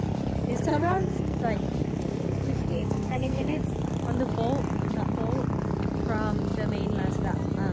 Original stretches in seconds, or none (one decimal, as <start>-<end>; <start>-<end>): 0.0-0.7; 1.4-1.8; 3.6-7.7